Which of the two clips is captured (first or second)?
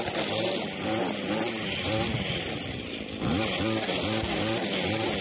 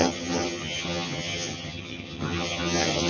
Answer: first